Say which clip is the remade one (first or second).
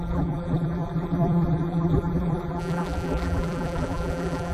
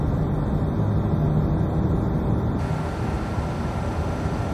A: first